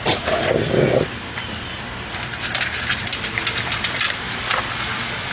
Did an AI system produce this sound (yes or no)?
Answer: no